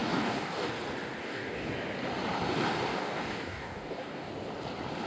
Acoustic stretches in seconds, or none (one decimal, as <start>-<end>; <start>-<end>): 0.7-1.2; 1.7-2.9; 4.3-5.1